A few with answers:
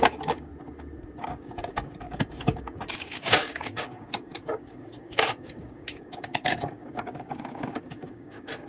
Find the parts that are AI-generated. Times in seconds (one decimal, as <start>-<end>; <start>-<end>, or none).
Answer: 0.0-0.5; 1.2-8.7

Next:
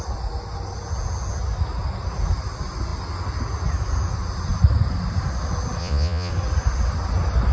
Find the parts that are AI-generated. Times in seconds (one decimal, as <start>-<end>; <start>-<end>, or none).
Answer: 5.8-6.3

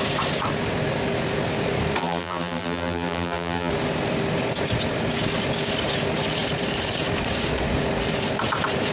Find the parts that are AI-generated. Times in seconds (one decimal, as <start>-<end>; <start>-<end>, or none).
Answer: 2.0-3.7

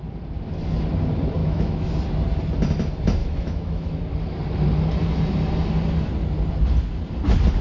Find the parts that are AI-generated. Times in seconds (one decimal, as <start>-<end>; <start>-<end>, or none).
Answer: 1.4-1.9; 3.2-4.0

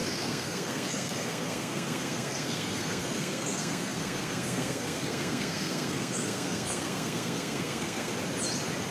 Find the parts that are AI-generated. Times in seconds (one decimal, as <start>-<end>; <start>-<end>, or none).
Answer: 0.0-8.1

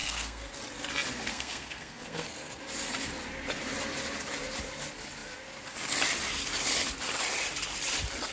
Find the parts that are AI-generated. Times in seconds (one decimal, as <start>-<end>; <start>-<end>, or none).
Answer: 0.0-0.5; 1.3-2.6